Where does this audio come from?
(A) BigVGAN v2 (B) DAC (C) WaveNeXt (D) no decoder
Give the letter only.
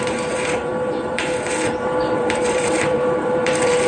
A